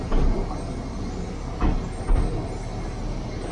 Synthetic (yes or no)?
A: no